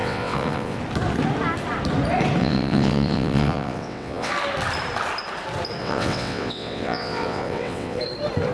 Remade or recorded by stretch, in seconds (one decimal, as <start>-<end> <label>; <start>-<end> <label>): 0.0-0.8 remade; 0.8-2.4 recorded; 2.4-4.3 remade; 4.3-5.8 recorded; 5.8-8.0 remade; 8.0-8.5 recorded